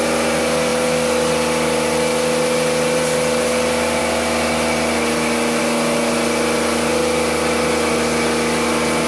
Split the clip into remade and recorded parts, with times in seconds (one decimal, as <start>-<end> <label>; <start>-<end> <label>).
0.0-9.1 recorded